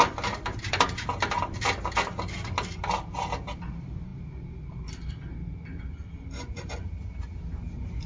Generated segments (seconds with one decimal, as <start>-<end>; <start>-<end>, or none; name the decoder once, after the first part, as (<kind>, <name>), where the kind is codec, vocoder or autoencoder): none